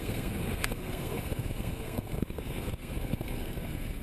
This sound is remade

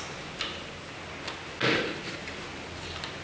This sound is recorded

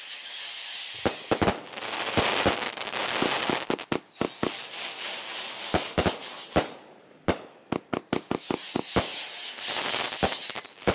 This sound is recorded